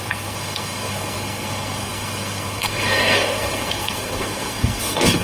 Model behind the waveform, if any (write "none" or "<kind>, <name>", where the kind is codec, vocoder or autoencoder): codec, SNAC